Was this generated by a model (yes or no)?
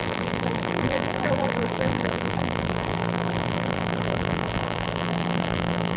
yes